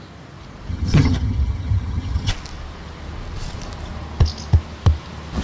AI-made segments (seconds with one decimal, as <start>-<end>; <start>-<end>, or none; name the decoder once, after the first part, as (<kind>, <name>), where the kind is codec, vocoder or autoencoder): 0.7-2.3 (vocoder, HiFi-GAN)